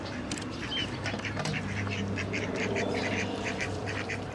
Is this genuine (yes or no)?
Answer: no